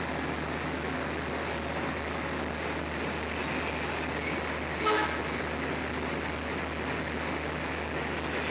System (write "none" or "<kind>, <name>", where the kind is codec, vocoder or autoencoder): none